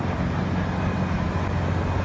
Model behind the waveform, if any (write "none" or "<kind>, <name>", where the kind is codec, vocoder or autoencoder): none